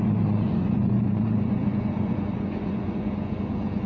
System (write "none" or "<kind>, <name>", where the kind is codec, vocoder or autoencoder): vocoder, Vocos